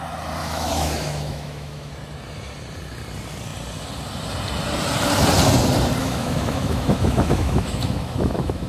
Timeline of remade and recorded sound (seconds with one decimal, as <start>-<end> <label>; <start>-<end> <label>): 0.0-0.4 recorded; 0.4-1.9 remade; 1.9-6.0 recorded; 6.0-8.7 remade